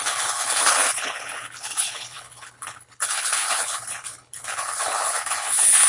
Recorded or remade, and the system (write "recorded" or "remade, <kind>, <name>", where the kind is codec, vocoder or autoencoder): remade, codec, HILCodec